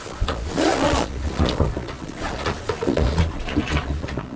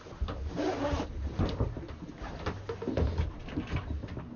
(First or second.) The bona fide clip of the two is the second